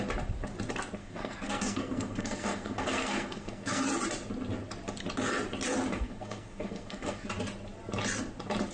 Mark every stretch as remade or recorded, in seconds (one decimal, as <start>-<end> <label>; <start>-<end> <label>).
0.0-1.0 recorded; 1.0-3.8 remade; 3.8-5.9 recorded; 5.9-7.3 remade; 7.3-8.7 recorded